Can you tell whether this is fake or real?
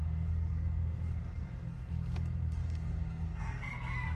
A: fake